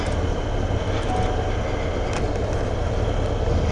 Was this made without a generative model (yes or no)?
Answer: yes